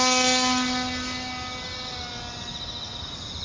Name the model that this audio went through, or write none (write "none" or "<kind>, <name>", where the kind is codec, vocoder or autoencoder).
none